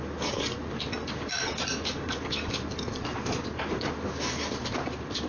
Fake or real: real